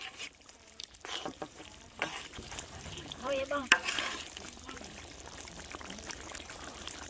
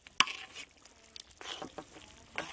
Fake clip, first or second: first